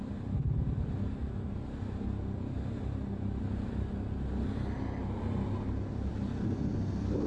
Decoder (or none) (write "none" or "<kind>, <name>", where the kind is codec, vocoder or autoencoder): none